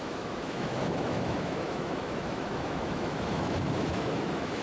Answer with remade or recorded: remade